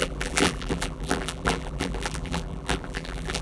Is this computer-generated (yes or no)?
yes